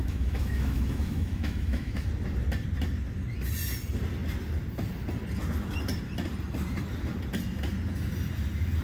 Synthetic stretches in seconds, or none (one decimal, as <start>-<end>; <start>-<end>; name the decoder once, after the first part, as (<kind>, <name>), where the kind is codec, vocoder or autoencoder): 0.0-2.1 (autoencoder, DAC-VAE)